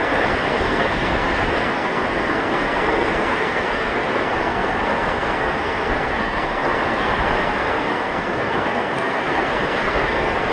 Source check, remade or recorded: remade